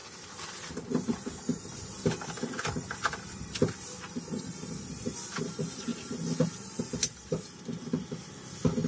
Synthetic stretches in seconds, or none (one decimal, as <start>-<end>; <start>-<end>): none